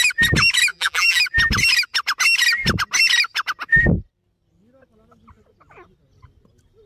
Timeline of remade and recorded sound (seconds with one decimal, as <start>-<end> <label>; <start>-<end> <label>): 0.0-0.7 recorded; 0.7-1.2 remade; 1.2-6.9 recorded